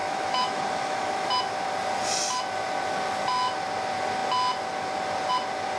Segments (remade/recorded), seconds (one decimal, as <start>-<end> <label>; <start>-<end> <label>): 0.0-1.3 remade; 1.3-5.8 recorded